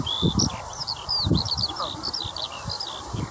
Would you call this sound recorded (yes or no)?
yes